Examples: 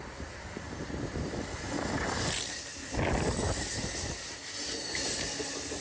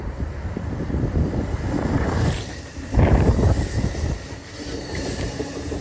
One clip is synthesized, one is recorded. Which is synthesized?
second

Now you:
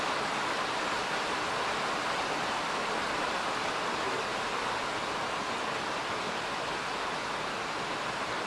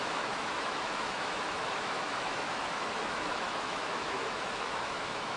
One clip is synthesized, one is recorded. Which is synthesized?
second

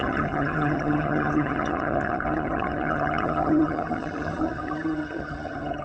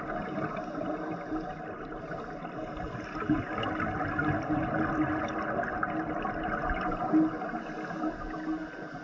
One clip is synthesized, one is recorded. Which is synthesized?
first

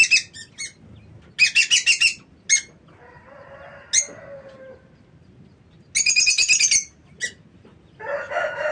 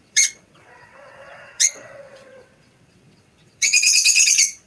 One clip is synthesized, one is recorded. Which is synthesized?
second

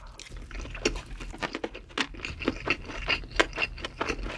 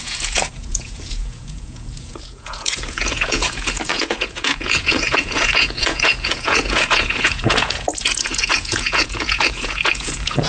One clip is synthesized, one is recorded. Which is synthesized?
second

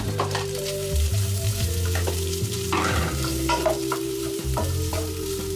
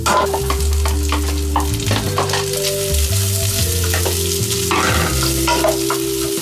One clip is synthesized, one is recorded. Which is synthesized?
first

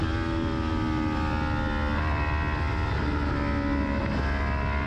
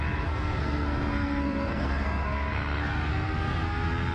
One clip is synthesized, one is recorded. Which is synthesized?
second